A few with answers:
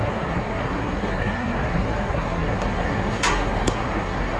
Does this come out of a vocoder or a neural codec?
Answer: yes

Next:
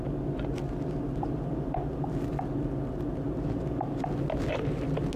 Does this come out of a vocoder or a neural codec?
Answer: no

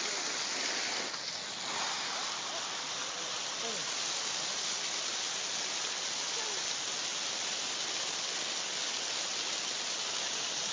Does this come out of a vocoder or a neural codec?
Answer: no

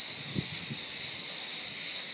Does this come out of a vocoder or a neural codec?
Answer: no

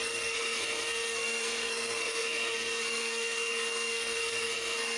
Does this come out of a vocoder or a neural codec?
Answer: yes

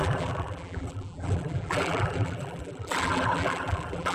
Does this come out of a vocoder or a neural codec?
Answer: yes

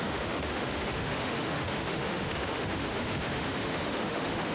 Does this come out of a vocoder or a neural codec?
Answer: yes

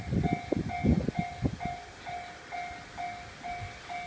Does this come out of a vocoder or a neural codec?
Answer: no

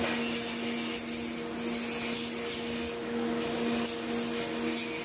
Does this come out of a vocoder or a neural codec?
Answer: no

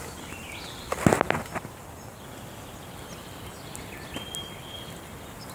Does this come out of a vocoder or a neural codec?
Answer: no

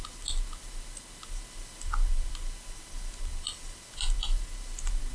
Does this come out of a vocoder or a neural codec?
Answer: no